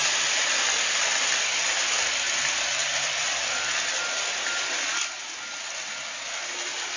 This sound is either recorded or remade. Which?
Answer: recorded